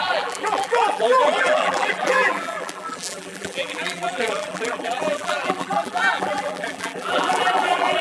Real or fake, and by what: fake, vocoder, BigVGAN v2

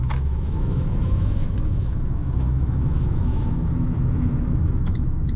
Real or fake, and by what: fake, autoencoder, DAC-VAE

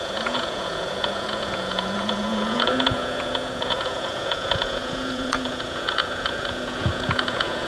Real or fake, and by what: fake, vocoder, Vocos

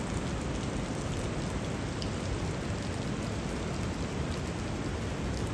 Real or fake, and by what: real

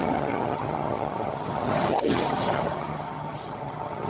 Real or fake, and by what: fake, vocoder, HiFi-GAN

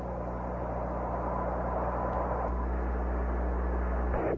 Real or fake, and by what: real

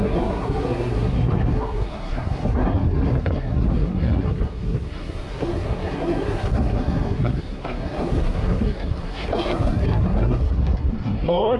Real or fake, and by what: fake, codec, SNAC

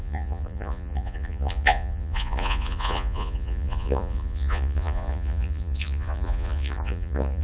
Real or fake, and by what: fake, vocoder, Vocos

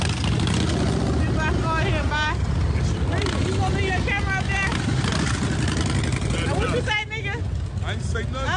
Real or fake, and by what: real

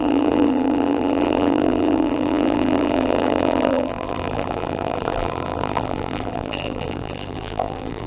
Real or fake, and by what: fake, vocoder, BigVGAN v2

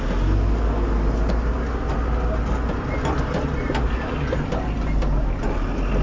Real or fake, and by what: real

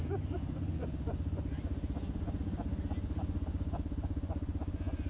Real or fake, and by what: fake, vocoder, Vocos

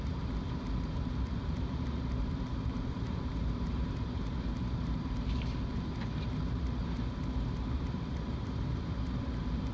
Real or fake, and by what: fake, vocoder, BigVGAN v2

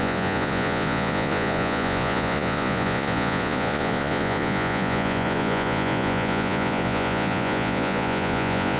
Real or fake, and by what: fake, vocoder, Vocos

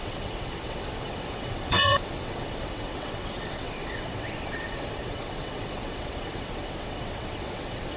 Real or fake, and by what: fake, vocoder, WaveNeXt